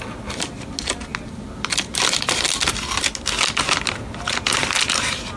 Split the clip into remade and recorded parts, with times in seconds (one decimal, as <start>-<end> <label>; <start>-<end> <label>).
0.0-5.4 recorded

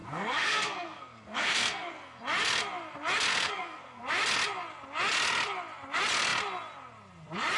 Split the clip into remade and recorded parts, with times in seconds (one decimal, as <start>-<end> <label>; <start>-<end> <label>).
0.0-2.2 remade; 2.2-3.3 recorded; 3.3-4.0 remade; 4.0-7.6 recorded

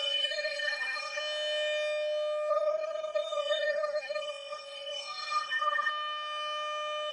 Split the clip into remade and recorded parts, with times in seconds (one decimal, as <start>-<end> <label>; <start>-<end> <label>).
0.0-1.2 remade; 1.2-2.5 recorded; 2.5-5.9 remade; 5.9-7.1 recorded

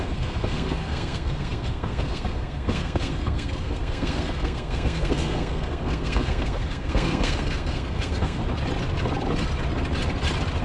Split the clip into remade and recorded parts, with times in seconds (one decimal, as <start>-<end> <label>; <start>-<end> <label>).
0.0-8.4 remade; 8.4-10.6 recorded

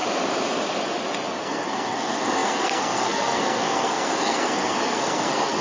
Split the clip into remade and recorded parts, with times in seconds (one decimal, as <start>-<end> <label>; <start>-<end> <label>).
0.0-1.4 recorded; 1.4-5.6 remade

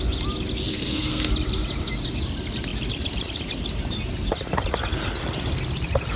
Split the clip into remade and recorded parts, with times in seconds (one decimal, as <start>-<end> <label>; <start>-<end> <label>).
0.0-0.7 recorded; 0.7-1.3 remade; 1.3-6.2 recorded